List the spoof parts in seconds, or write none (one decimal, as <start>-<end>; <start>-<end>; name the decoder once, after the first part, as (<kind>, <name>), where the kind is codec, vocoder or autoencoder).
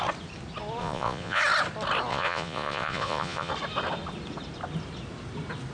0.8-1.4 (vocoder, Vocos); 2.1-3.5